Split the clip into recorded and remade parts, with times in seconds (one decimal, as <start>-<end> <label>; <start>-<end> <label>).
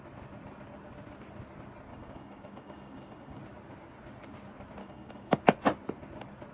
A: 0.0-1.9 recorded; 1.9-3.4 remade; 3.4-4.8 recorded; 4.8-5.4 remade; 5.4-6.5 recorded